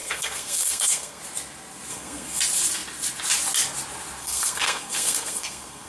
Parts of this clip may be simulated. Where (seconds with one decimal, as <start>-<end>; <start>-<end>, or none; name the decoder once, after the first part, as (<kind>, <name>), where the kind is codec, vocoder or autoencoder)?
0.0-1.2 (codec, SNAC); 1.9-2.4; 4.2-5.9